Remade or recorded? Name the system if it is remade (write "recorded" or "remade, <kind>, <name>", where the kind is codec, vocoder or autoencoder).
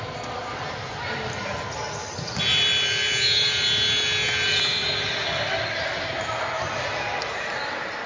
recorded